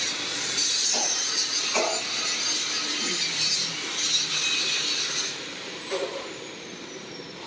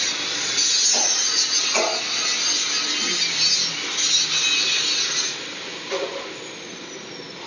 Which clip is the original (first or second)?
second